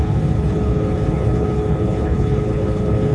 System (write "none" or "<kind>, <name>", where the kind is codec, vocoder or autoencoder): codec, HILCodec